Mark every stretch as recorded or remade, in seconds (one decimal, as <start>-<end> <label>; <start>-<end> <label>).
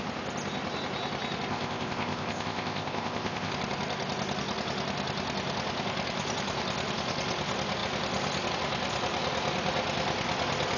0.0-1.5 recorded; 1.5-3.5 remade; 3.5-10.8 recorded